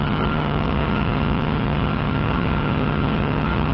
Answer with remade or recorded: remade